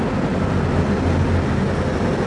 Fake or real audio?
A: real